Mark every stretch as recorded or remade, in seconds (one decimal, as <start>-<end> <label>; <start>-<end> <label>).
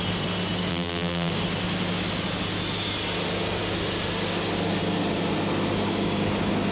0.0-0.7 recorded; 0.7-1.3 remade; 1.3-6.7 recorded